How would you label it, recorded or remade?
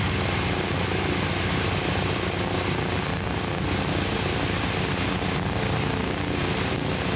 recorded